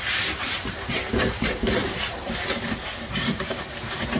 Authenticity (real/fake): fake